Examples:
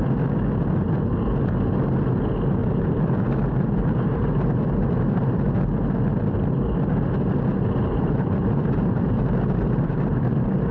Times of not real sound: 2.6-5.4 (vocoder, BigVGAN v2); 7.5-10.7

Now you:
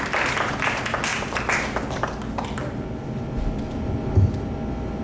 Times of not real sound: none

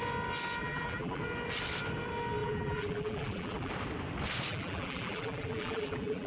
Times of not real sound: 0.6-1.2 (vocoder, BigVGAN v2); 2.4-3.7; 4.5-6.3

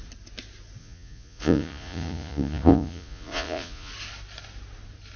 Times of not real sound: 0.8-3.9 (vocoder, Vocos)

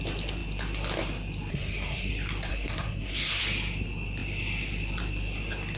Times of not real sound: 1.5-2.1 (codec, SNAC); 2.5-3.4

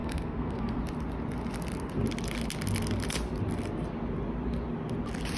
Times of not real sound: 0.0-0.8 (codec, SNAC)

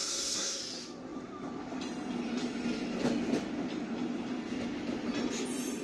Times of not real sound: 0.0-0.6 (codec, SNAC)

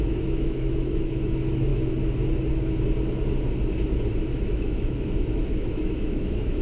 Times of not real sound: 0.0-1.7 (autoencoder, DAC-VAE); 4.1-6.6